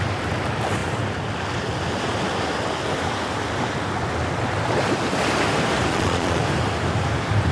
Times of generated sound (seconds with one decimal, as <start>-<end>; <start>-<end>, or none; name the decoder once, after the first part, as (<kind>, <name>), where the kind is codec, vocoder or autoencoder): 5.9-6.4 (vocoder, Vocos)